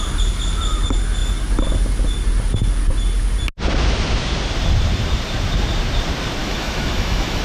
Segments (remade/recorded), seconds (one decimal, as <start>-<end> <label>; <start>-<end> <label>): 0.0-6.4 recorded; 6.4-7.4 remade